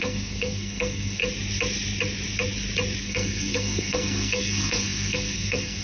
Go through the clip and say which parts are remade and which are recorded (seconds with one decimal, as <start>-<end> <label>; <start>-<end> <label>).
0.0-1.2 remade; 1.2-3.0 recorded; 3.0-5.8 remade